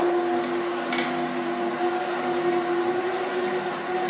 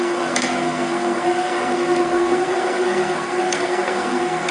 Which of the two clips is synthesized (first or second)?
second